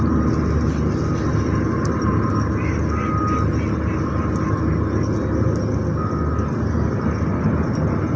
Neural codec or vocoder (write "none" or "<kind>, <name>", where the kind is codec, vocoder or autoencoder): none